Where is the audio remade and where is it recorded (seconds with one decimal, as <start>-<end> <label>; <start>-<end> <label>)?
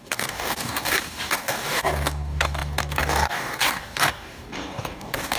0.0-5.4 remade